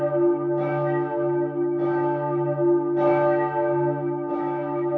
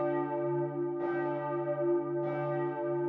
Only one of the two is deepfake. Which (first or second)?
first